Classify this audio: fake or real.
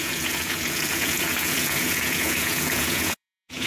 fake